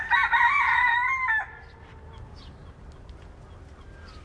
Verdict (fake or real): real